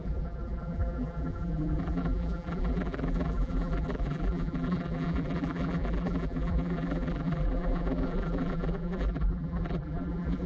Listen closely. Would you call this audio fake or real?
fake